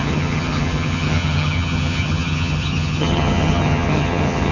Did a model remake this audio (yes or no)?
yes